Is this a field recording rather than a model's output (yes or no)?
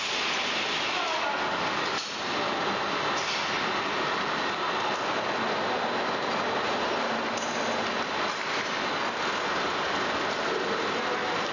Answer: yes